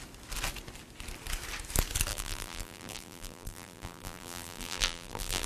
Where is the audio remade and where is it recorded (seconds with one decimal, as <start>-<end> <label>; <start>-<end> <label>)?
0.0-2.1 recorded; 2.1-5.5 remade